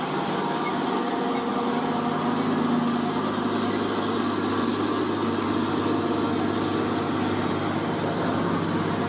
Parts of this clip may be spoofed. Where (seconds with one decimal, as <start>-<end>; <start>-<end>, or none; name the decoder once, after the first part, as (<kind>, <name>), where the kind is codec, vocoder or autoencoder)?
none